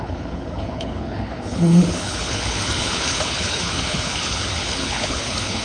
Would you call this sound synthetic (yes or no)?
yes